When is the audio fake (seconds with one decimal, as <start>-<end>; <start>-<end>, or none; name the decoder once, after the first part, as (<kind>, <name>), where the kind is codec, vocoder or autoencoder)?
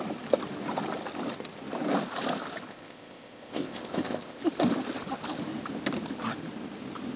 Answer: 2.7-4.4 (codec, ZipCodec)